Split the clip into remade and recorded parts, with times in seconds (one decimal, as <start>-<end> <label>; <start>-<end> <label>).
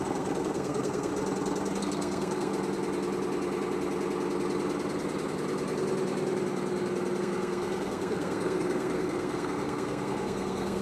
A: 0.0-1.1 remade; 1.1-1.8 recorded; 1.8-2.5 remade; 2.5-7.2 recorded; 7.2-10.8 remade